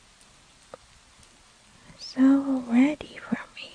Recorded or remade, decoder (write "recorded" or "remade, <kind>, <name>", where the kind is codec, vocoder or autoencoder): recorded